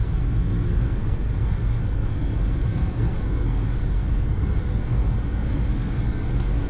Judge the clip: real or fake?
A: fake